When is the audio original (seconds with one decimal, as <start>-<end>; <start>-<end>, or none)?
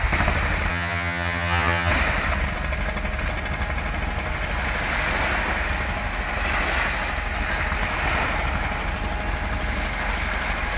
0.0-0.7; 1.9-10.8